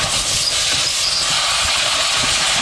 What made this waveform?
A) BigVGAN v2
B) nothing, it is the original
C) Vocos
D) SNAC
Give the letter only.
B